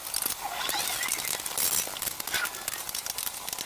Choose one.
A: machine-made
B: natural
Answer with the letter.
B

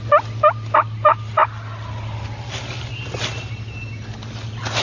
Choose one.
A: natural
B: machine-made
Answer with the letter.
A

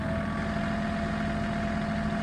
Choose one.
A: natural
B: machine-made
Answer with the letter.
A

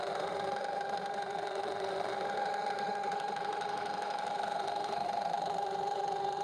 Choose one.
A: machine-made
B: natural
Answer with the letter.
A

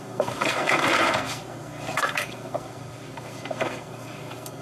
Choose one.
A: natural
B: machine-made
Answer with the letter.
B